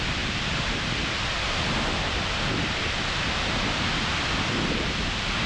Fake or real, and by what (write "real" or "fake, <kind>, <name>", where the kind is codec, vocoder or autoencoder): real